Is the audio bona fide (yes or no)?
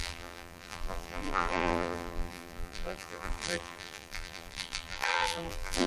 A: no